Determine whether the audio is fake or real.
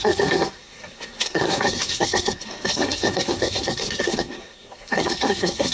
fake